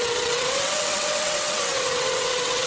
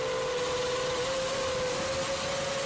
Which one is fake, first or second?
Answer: first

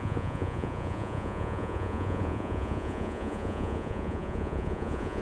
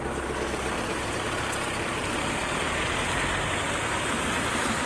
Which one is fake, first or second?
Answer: first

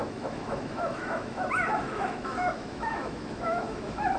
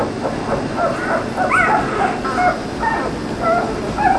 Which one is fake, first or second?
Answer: first